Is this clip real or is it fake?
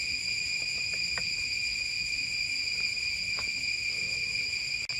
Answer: real